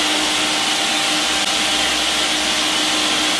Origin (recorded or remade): recorded